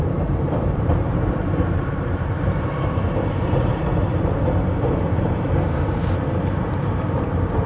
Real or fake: fake